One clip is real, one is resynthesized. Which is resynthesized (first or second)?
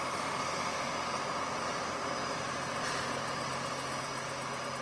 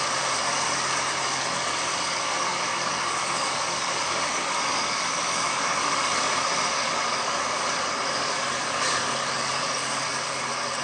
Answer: second